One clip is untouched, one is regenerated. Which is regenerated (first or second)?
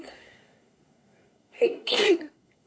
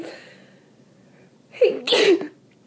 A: first